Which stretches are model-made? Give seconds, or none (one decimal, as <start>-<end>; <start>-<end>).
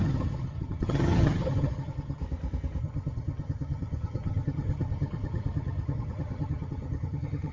0.0-2.2; 2.8-7.5